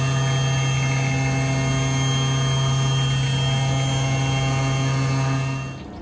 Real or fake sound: real